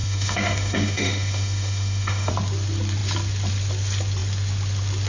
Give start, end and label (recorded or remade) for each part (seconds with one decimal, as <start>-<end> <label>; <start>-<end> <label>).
0.0-2.3 remade; 2.3-5.1 recorded